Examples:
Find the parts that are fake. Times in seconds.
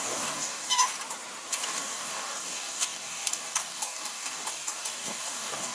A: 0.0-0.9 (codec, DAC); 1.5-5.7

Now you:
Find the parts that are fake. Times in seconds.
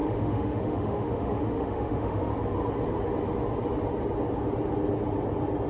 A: 0.0-2.3 (autoencoder, DAC-VAE)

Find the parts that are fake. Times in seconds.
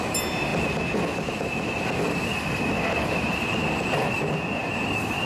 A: none